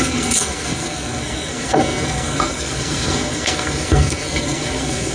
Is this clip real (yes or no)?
no